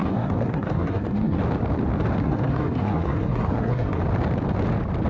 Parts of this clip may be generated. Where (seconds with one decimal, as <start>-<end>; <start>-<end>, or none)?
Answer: 0.0-1.4; 2.2-4.0